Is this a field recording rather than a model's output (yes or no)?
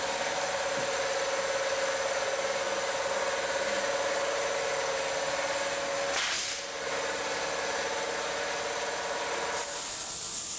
yes